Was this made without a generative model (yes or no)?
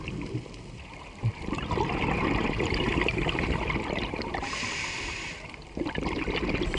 no